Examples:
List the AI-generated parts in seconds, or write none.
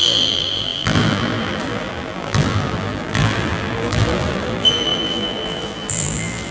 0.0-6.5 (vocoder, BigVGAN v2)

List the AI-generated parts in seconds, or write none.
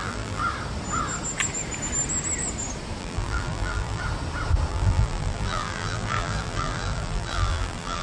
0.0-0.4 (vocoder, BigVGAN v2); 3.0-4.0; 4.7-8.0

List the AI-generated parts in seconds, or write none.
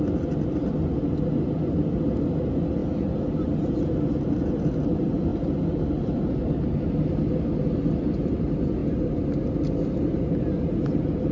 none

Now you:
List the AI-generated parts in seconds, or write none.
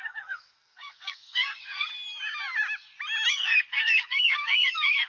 0.0-1.9 (codec, SNAC); 3.3-5.1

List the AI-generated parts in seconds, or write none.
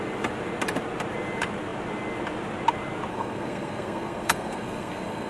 3.1-5.3 (codec, SNAC)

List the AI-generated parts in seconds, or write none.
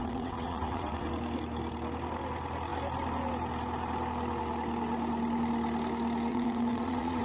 0.0-1.1 (vocoder, WaveNeXt); 6.3-7.2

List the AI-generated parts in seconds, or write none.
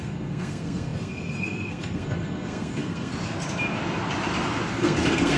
0.0-3.1 (codec, SNAC); 4.8-5.4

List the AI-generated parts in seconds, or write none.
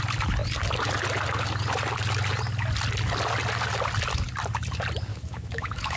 5.1-6.0 (autoencoder, DAC-VAE)